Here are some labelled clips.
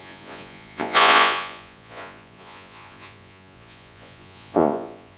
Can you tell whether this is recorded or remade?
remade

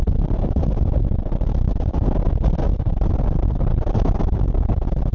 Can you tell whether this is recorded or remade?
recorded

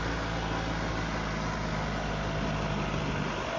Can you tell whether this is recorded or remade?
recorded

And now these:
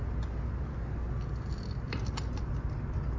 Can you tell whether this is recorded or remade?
recorded